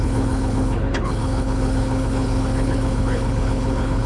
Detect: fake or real fake